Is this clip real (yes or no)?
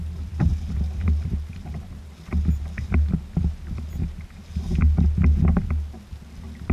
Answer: yes